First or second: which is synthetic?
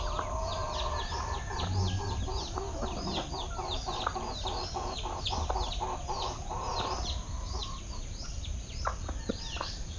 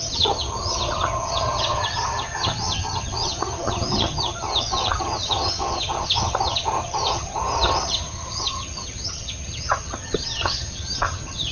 second